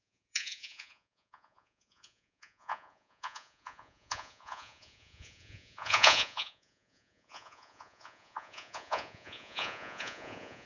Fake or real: fake